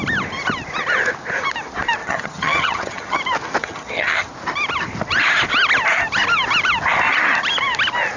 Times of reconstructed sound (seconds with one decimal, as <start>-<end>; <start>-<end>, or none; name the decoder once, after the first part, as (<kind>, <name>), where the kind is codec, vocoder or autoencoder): 2.0-3.2 (vocoder, HiFi-GAN); 3.6-4.3